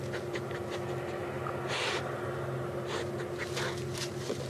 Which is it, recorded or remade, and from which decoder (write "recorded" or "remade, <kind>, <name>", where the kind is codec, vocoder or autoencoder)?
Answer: recorded